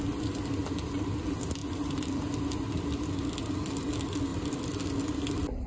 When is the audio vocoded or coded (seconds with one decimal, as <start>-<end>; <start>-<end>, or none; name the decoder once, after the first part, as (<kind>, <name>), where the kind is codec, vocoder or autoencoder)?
1.6-3.1 (vocoder, BigVGAN v2); 4.3-4.8